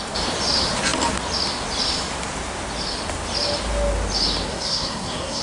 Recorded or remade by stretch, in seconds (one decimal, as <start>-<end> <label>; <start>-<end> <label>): 0.0-4.5 recorded; 4.5-5.4 remade